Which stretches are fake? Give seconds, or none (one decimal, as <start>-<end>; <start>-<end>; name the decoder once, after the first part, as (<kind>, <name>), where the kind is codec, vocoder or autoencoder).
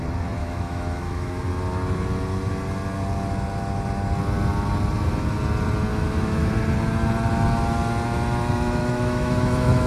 0.4-1.4 (autoencoder, DAC-VAE); 5.9-6.5; 8.8-9.9